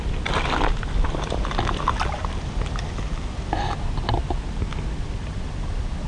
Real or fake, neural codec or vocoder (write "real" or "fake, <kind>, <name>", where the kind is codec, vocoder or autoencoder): real